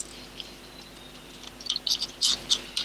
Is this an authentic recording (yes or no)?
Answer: yes